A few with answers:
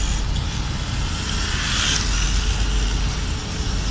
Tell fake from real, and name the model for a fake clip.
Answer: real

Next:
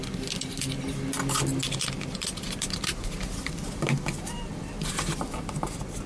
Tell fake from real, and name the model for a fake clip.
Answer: real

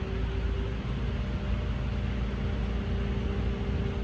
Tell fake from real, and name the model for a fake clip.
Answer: real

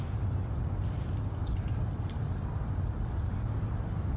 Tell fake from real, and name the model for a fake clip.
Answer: real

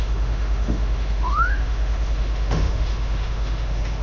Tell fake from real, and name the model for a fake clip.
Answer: fake, autoencoder, DAC-VAE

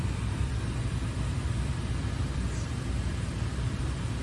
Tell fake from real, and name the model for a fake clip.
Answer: fake, vocoder, BigVGAN v2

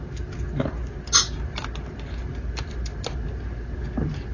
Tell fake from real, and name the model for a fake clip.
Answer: real